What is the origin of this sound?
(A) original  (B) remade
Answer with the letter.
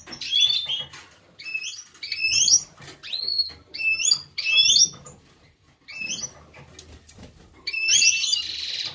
A